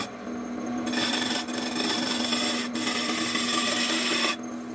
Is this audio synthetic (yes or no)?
no